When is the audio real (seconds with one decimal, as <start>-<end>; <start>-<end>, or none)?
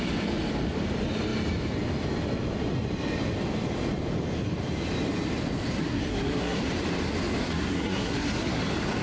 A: 0.0-5.8; 6.6-7.4; 8.6-9.0